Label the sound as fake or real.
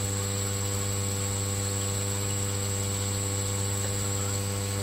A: real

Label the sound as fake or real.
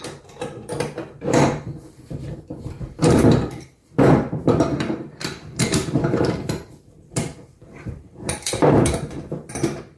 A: fake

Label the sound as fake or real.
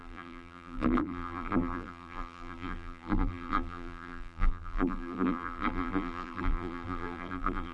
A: fake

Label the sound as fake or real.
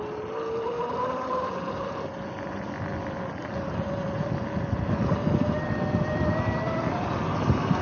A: real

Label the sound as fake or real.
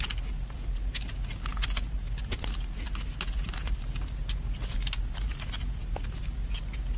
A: real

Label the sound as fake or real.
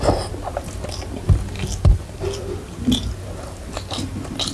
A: real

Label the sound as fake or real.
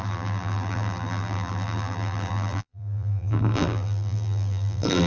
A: fake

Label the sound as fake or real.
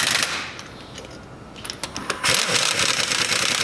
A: real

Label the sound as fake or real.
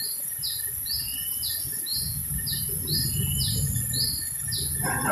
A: real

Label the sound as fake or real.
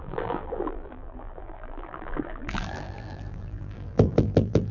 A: fake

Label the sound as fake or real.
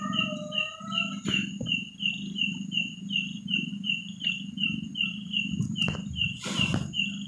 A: real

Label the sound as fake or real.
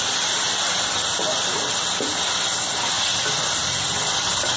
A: fake